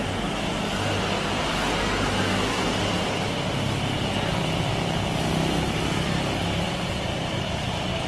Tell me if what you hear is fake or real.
real